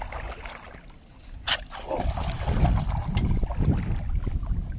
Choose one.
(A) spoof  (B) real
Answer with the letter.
B